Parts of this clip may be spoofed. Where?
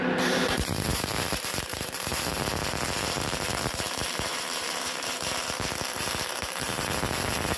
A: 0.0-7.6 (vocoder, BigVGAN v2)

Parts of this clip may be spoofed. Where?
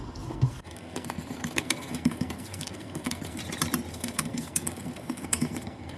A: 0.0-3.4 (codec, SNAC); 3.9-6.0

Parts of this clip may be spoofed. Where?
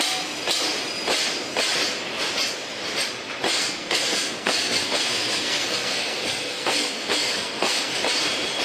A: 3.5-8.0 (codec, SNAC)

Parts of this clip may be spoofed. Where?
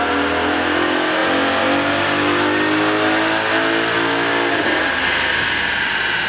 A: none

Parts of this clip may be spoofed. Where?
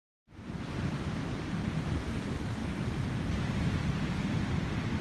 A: 1.2-2.6 (vocoder, BigVGAN v2); 3.4-5.0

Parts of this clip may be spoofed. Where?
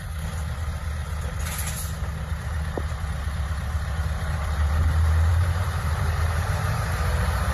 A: 5.3-6.5 (vocoder, BigVGAN v2)